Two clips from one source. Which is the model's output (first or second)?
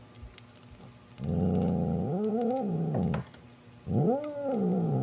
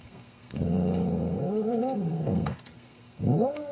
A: second